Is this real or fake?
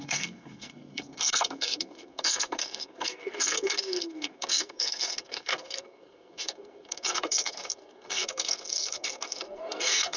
fake